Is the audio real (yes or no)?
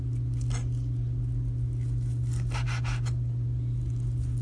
yes